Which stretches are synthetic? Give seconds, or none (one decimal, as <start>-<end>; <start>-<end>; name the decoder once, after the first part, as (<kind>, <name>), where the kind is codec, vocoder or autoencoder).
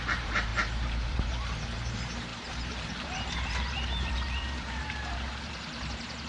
0.0-6.3 (vocoder, BigVGAN v2)